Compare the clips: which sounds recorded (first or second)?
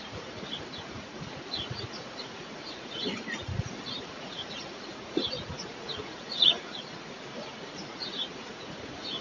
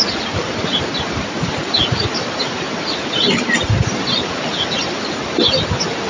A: second